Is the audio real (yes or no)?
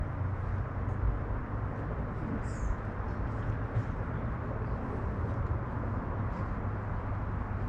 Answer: yes